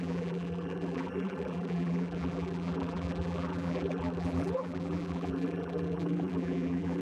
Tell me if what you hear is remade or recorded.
remade